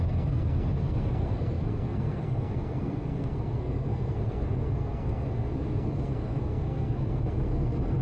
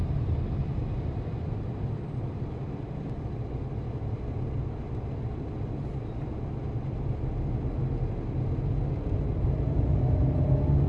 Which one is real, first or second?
second